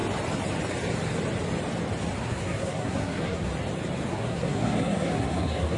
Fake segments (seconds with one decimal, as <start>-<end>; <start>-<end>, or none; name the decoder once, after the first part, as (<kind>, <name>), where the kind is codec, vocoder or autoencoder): 2.2-3.5 (codec, SNAC); 4.1-5.8